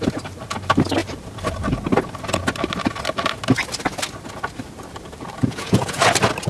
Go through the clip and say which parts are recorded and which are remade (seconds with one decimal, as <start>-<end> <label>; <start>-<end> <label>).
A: 0.0-5.4 recorded; 5.4-6.0 remade; 6.0-6.5 recorded